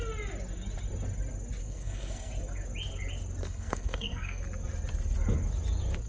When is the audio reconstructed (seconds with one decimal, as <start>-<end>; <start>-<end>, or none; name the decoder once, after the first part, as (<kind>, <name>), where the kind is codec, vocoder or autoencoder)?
1.6-2.3 (codec, SNAC); 3.4-4.4